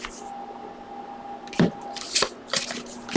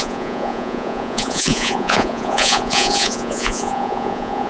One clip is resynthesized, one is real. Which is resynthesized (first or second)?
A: second